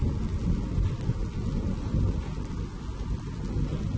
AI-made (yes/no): no